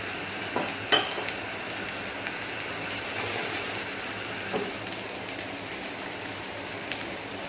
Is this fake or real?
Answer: real